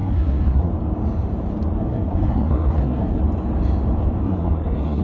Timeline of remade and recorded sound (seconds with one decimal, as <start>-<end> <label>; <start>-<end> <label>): 0.0-0.7 remade; 0.7-1.8 recorded; 1.8-3.2 remade; 3.2-4.2 recorded; 4.2-5.0 remade